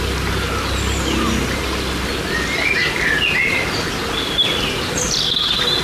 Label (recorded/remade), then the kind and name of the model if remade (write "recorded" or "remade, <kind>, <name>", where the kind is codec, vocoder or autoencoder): recorded